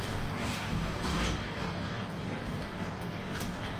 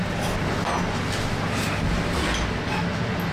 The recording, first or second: second